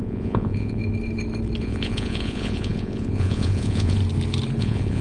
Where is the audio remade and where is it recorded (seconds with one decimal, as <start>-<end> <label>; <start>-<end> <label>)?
0.0-0.8 remade; 0.8-1.6 recorded; 1.6-4.0 remade; 4.0-4.6 recorded; 4.6-5.0 remade